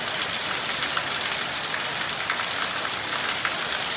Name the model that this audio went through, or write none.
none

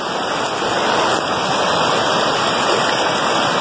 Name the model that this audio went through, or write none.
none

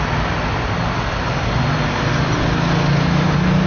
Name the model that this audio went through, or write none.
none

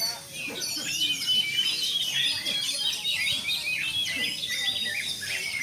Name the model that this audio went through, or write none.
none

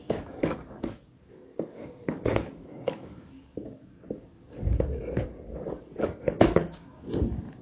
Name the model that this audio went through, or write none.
codec, DAC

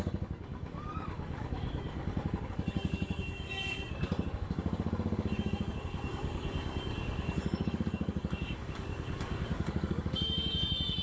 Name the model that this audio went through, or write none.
codec, DAC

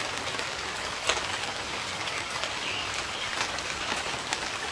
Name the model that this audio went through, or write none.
codec, DAC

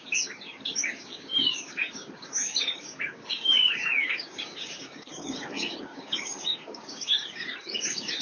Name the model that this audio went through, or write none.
codec, DAC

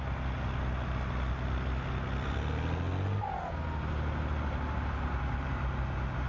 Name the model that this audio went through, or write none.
none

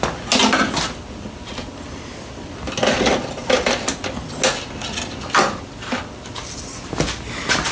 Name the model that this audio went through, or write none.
none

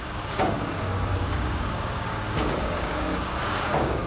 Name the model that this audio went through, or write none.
codec, DAC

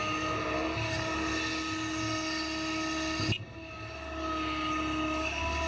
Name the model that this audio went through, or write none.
none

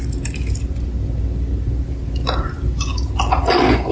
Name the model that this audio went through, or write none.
none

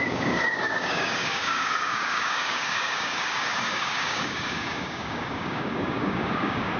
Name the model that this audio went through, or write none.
codec, DAC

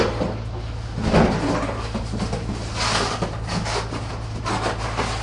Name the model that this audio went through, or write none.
none